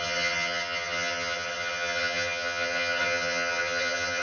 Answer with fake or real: fake